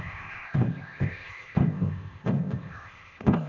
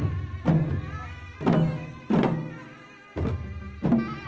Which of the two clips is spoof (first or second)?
first